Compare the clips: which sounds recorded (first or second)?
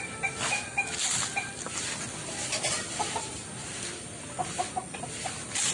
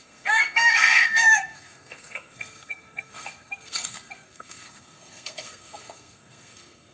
first